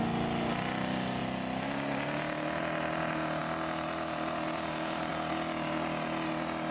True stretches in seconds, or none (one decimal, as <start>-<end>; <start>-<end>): 0.0-6.7